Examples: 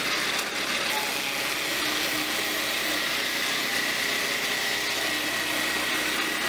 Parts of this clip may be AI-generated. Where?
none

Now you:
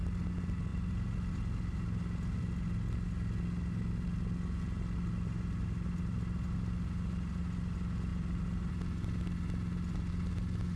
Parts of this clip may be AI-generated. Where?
none

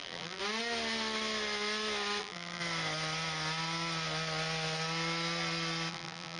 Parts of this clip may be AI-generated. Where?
0.0-0.4 (vocoder, BigVGAN v2); 2.2-2.6; 5.9-6.4

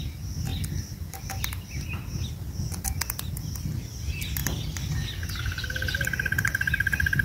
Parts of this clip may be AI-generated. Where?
none

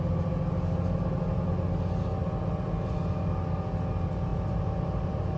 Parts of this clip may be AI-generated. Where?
4.3-5.4 (vocoder, BigVGAN v2)

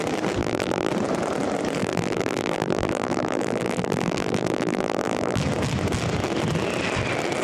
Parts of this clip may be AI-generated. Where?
0.4-0.9 (vocoder, BigVGAN v2); 1.8-5.4

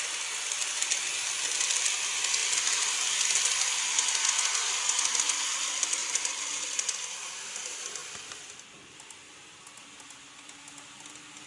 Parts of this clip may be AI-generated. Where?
6.0-7.3 (vocoder, BigVGAN v2)